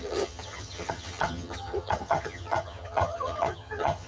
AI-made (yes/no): yes